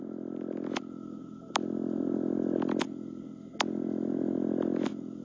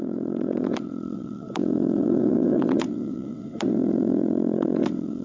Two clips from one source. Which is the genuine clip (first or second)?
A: first